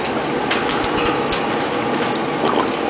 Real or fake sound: real